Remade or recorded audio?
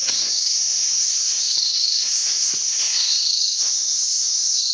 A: remade